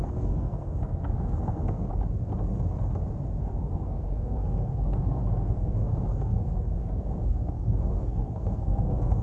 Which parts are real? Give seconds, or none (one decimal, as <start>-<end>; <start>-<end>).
1.9-3.4